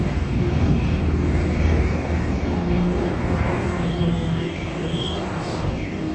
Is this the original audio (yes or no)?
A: no